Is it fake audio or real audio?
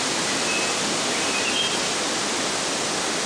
real